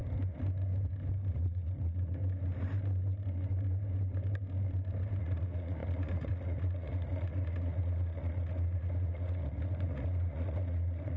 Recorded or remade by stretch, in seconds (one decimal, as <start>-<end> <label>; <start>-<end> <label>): 0.0-1.3 recorded; 1.3-2.2 remade; 2.2-5.2 recorded; 5.2-11.2 remade